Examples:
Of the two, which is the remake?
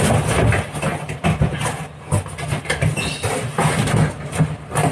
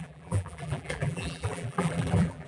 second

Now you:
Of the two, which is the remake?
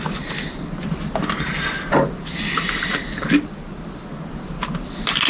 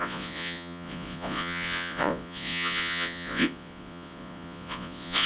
second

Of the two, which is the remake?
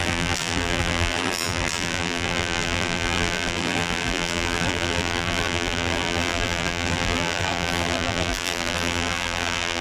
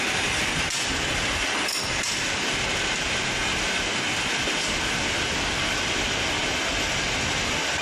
first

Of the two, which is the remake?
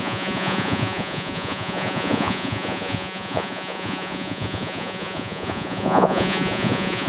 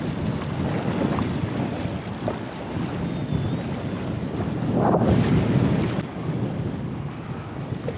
first